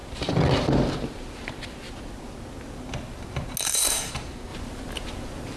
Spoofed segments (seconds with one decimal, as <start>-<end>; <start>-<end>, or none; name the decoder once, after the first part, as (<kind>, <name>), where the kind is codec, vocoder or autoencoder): 3.6-4.1 (codec, SNAC)